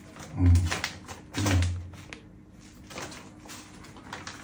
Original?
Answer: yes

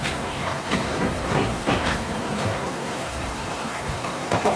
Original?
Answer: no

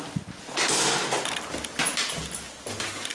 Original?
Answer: yes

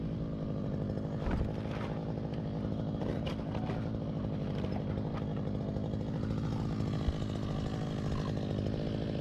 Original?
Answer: yes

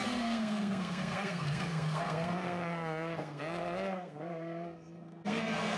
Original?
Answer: no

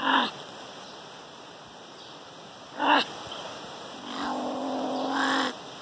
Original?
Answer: yes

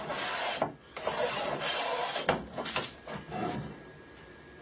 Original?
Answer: yes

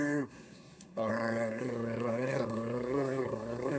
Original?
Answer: no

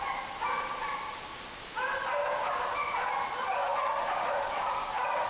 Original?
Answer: yes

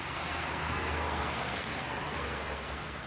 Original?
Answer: no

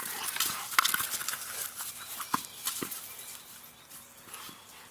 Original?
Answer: yes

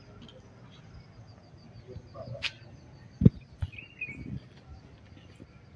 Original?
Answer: yes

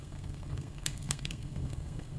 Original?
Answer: no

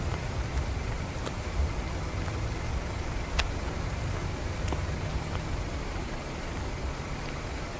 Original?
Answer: yes